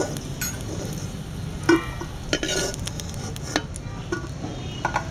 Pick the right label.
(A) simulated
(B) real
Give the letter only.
B